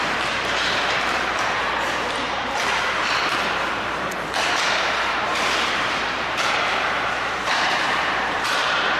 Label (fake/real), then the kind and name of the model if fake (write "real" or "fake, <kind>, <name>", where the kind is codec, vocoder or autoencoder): fake, vocoder, BigVGAN v2